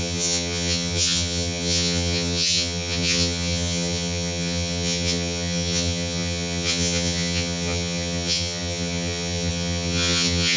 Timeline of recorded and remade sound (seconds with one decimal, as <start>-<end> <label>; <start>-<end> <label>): 0.0-10.6 remade